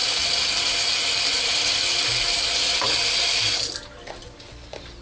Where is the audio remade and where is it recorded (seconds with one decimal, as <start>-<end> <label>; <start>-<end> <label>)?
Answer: 0.0-5.0 recorded